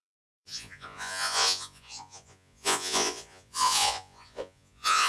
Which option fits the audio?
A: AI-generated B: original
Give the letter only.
A